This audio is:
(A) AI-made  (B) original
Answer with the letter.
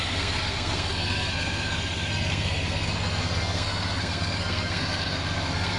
A